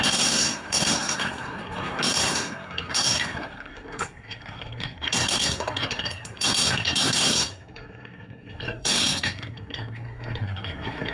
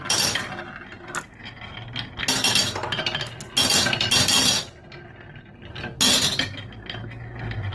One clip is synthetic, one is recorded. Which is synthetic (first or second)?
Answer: first